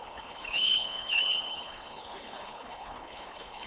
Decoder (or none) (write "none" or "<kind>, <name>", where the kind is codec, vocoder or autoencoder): codec, HILCodec